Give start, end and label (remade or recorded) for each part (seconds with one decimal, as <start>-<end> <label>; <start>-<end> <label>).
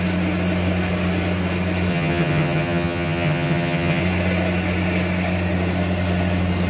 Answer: 0.0-1.9 recorded; 1.9-4.0 remade; 4.0-6.7 recorded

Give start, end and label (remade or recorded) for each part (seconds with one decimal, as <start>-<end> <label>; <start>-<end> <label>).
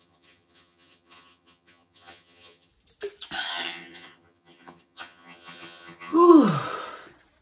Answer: 0.0-2.7 remade; 2.7-3.5 recorded; 3.5-6.3 remade; 6.3-7.4 recorded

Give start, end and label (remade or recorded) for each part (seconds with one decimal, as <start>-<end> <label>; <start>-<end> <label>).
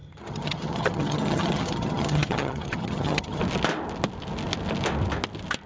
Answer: 0.0-3.4 remade; 3.4-5.7 recorded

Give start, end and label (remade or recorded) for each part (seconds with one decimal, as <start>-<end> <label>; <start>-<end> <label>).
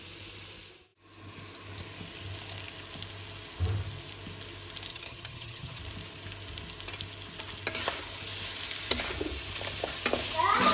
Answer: 0.0-4.9 recorded; 4.9-5.8 remade; 5.8-10.7 recorded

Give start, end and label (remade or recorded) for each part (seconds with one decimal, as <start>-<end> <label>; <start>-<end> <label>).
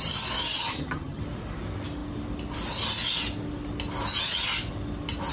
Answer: 0.0-0.5 recorded; 0.5-1.2 remade; 1.2-5.3 recorded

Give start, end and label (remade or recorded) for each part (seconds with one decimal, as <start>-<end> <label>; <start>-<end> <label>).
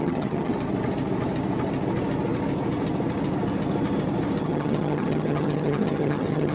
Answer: 0.0-0.5 remade; 0.5-4.4 recorded; 4.4-6.5 remade